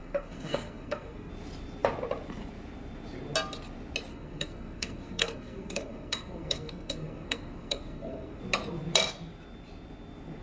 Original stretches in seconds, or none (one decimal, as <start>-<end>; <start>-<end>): 1.3-4.1; 8.4-10.4